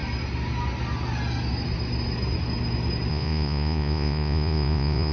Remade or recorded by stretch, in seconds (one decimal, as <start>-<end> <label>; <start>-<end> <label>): 0.0-3.1 recorded; 3.1-5.1 remade